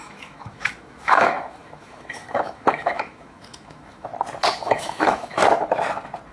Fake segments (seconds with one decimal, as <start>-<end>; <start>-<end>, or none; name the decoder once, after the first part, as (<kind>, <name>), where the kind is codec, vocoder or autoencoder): 0.0-4.1 (autoencoder, DAC-VAE); 4.6-5.4